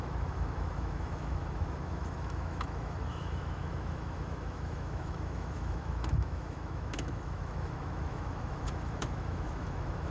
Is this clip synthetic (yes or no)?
yes